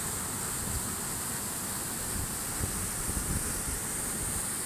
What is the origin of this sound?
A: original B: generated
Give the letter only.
A